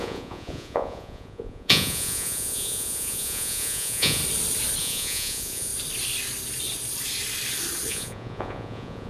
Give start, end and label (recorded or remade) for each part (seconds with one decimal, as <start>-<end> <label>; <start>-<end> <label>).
0.0-4.2 remade; 4.2-4.8 recorded; 4.8-5.7 remade; 5.7-7.9 recorded; 7.9-9.1 remade